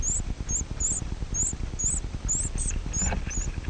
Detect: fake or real real